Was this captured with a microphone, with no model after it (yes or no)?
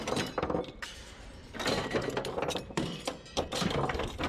no